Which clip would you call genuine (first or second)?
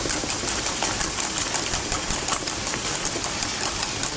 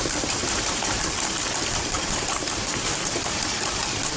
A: first